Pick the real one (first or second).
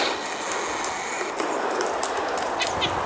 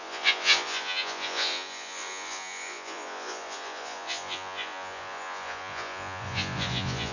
first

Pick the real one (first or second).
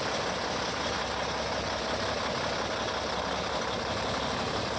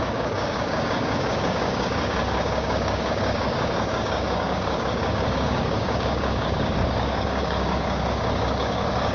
first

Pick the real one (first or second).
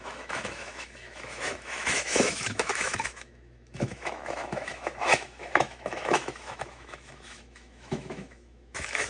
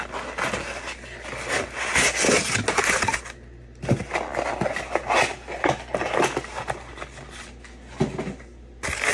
second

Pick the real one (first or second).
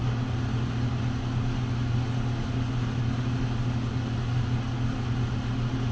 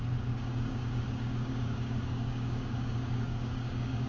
first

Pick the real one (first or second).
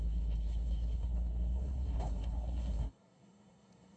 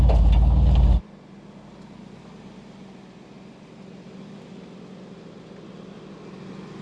second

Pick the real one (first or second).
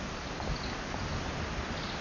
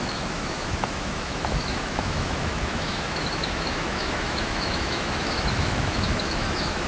first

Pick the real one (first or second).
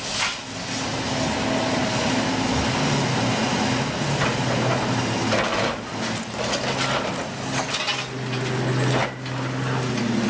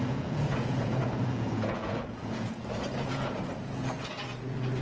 first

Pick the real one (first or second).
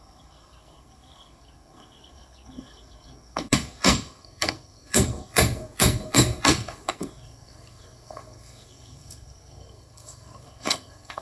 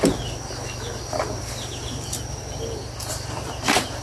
second